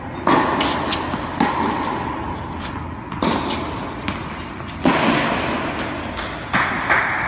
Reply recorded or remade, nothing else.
recorded